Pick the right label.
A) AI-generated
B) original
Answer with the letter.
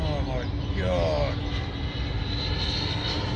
B